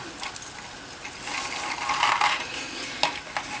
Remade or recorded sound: recorded